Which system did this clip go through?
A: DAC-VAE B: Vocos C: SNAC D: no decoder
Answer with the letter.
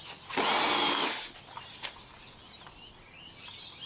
D